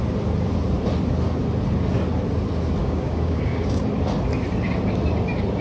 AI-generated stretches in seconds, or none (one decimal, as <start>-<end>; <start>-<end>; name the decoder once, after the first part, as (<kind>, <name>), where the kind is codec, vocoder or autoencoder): 2.8-3.8 (codec, DAC)